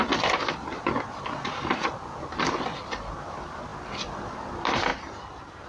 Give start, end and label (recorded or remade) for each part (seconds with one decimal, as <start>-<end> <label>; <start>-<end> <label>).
0.0-3.7 recorded; 3.7-4.5 remade; 4.5-4.9 recorded; 4.9-5.7 remade